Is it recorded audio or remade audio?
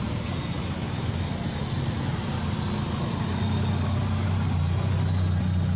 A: recorded